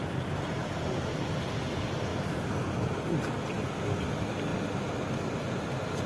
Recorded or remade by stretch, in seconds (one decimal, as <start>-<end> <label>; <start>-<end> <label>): 0.0-6.1 recorded